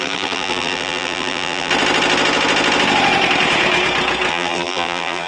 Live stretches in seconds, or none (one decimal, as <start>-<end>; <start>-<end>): 1.7-4.3